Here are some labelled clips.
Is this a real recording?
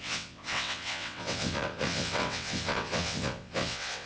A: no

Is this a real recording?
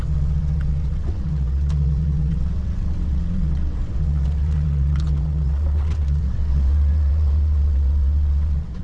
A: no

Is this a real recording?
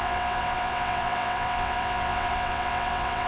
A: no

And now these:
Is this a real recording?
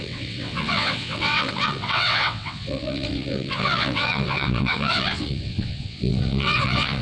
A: no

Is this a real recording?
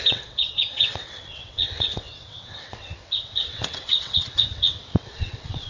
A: no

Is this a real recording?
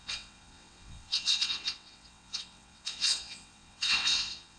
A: no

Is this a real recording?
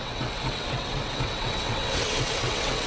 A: no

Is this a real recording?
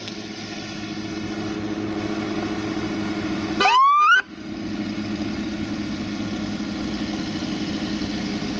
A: yes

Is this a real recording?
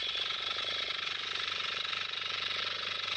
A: no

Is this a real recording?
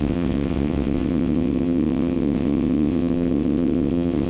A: no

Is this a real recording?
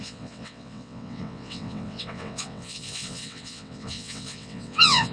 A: no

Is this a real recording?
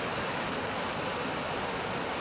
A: yes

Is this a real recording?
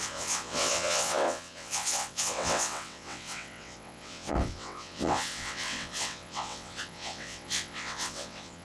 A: no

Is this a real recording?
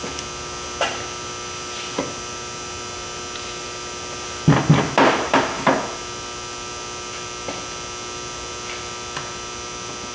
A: yes